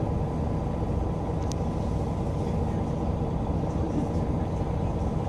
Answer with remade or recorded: recorded